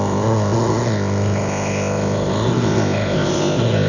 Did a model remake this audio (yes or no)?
yes